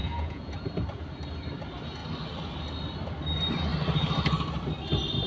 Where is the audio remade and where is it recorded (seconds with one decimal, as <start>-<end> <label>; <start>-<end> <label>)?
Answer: 0.0-0.7 remade; 0.7-5.3 recorded